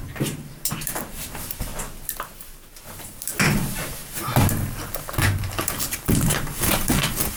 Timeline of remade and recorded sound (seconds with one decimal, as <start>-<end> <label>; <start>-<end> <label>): 0.0-1.7 remade; 1.7-3.0 recorded; 3.0-7.4 remade